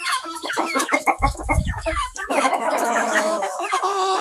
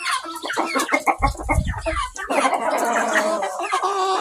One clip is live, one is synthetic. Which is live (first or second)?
second